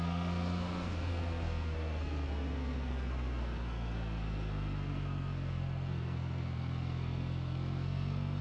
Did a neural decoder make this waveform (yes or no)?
yes